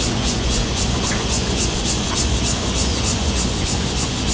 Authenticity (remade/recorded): remade